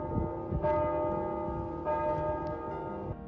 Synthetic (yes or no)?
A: no